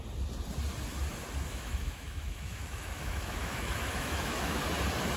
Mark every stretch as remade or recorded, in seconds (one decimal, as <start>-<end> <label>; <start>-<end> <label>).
0.0-1.5 recorded; 1.5-4.6 remade; 4.6-5.2 recorded